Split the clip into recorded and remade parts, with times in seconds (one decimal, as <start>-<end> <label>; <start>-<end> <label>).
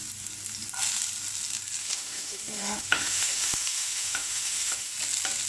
0.0-1.8 recorded; 1.8-4.9 remade; 4.9-5.5 recorded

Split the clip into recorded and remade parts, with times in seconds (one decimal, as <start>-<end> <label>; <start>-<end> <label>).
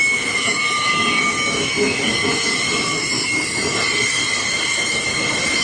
0.0-3.7 remade; 3.7-4.5 recorded; 4.5-5.6 remade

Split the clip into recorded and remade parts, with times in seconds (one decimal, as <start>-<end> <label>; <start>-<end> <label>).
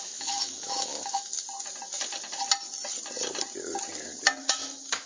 0.0-1.3 remade; 1.3-4.4 recorded; 4.4-5.1 remade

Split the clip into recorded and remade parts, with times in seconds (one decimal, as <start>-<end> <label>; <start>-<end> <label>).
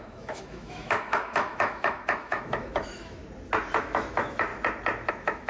0.0-3.2 remade; 3.2-3.8 recorded; 3.8-4.5 remade; 4.5-5.1 recorded; 5.1-5.5 remade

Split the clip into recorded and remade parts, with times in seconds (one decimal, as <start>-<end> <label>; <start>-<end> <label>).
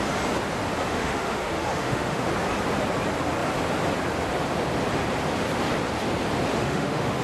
0.0-0.9 recorded; 0.9-2.3 remade; 2.3-6.5 recorded; 6.5-7.2 remade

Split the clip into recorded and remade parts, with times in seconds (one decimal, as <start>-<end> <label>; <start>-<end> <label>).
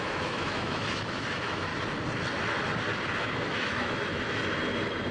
0.0-1.7 remade; 1.7-3.2 recorded; 3.2-4.4 remade; 4.4-5.1 recorded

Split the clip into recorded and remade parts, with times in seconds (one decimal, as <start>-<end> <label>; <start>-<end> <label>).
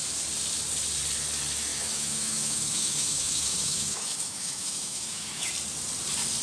0.0-1.7 recorded; 1.7-5.5 remade; 5.5-6.4 recorded